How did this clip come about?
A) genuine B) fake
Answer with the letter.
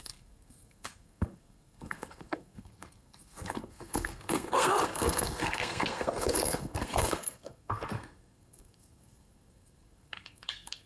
B